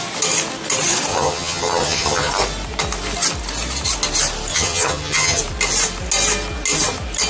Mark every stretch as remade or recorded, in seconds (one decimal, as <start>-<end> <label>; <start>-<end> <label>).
0.0-1.1 recorded; 1.1-2.3 remade; 2.3-4.5 recorded; 4.5-5.4 remade; 5.4-7.3 recorded